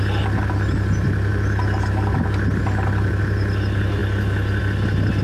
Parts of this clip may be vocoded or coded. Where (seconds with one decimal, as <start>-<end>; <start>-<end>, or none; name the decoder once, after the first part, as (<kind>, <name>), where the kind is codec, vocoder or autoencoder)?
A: none